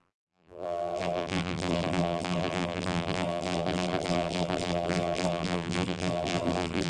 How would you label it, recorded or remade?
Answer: remade